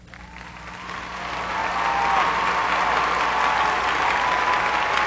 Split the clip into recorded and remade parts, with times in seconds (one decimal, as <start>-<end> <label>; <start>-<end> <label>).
0.0-5.1 recorded